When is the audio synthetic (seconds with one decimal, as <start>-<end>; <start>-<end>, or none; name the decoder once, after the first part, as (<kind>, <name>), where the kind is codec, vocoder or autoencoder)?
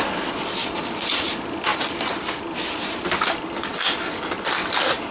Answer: 0.0-0.6 (vocoder, BigVGAN v2); 1.2-1.7; 2.6-5.1